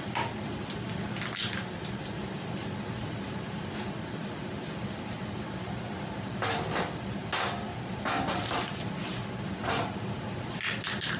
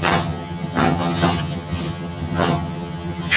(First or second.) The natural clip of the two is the first